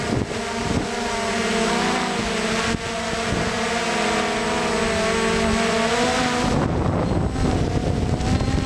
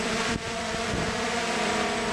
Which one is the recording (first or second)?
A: first